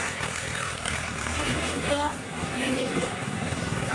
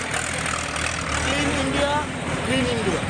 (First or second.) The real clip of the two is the second